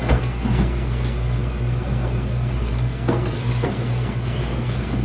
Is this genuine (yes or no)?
no